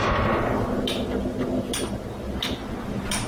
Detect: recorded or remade remade